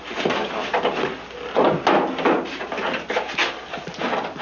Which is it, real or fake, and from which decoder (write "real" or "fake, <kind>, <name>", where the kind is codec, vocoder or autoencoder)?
real